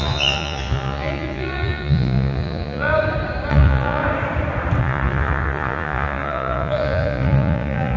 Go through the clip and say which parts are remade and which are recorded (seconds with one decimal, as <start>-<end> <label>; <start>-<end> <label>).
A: 0.0-2.9 remade; 2.9-3.5 recorded; 3.5-4.0 remade; 4.0-4.8 recorded; 4.8-8.0 remade